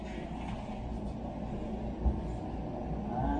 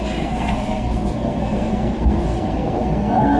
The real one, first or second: first